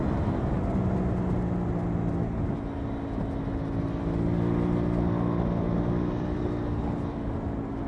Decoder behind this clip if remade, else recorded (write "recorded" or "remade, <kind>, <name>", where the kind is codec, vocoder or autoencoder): recorded